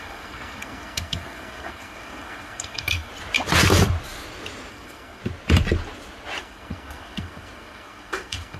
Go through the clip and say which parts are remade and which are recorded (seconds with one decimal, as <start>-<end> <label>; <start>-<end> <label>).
0.0-3.1 remade; 3.1-4.7 recorded; 4.7-5.2 remade; 5.2-6.4 recorded; 6.4-8.6 remade

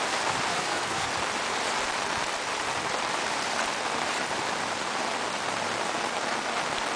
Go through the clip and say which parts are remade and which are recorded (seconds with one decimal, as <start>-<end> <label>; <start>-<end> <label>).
0.0-0.5 recorded; 0.5-1.1 remade; 1.1-7.0 recorded

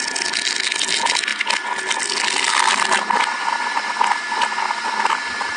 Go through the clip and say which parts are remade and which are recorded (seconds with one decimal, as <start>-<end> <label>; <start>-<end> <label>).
0.0-5.6 recorded

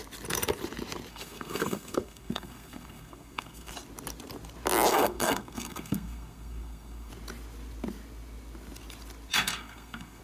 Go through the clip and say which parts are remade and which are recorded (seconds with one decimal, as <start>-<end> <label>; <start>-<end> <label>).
0.0-1.1 recorded; 1.1-3.7 remade; 3.7-4.9 recorded; 4.9-7.1 remade; 7.1-9.3 recorded; 9.3-10.2 remade

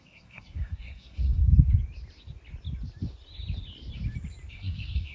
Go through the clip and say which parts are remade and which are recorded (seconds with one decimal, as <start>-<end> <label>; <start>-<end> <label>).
0.0-1.4 remade; 1.4-4.5 recorded; 4.5-5.1 remade

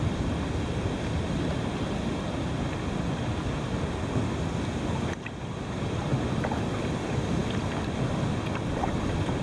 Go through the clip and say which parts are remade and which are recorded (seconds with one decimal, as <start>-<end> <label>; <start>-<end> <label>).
0.0-9.4 recorded